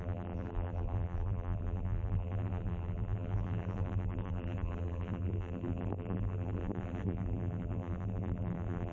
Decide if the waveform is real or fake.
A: fake